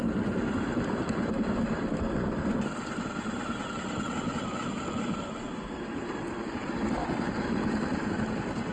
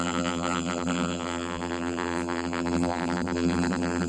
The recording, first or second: first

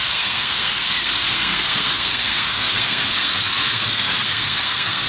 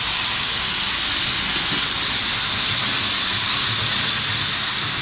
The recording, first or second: second